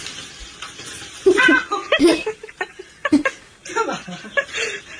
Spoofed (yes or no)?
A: no